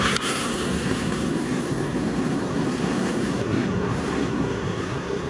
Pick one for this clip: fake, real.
fake